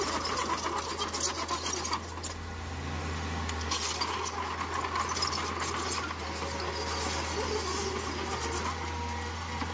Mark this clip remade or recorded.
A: recorded